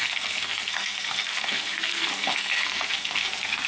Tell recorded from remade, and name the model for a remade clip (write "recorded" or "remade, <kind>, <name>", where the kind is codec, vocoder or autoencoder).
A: remade, codec, SNAC